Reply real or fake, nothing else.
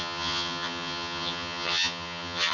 fake